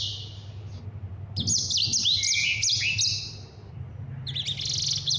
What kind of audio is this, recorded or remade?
recorded